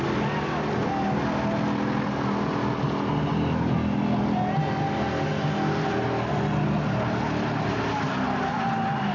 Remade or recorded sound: recorded